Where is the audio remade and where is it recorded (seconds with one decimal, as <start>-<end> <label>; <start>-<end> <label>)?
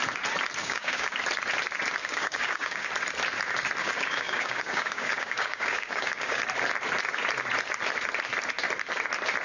0.0-0.6 recorded; 0.6-1.1 remade; 1.1-2.0 recorded; 2.0-2.9 remade; 2.9-3.8 recorded; 3.8-6.4 remade; 6.4-9.4 recorded